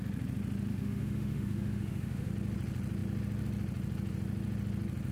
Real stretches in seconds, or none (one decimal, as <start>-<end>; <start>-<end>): 0.0-0.7; 2.3-5.1

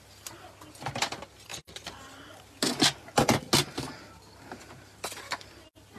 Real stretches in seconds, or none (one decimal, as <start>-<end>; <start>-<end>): 0.0-6.0

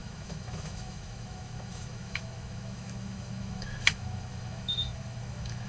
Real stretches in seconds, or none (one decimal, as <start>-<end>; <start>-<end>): none

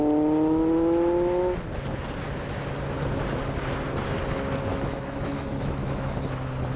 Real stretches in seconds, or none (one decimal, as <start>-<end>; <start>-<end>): 0.0-4.7; 6.2-6.8

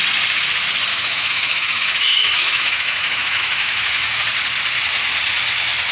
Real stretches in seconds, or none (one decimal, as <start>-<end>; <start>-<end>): 0.0-0.9; 4.2-5.9

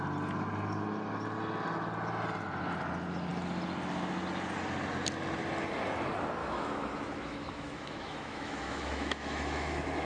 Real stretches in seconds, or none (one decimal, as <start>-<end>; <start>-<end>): 0.0-6.4